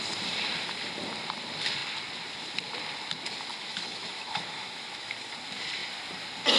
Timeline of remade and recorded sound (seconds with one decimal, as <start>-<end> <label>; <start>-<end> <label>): 0.0-3.5 recorded; 3.5-5.1 remade; 5.1-6.6 recorded